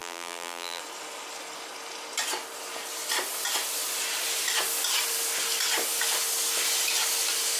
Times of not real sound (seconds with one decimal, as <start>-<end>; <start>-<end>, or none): 0.0-0.8